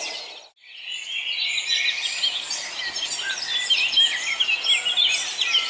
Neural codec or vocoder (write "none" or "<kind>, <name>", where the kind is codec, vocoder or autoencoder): none